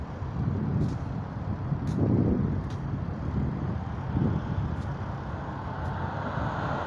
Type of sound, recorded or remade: recorded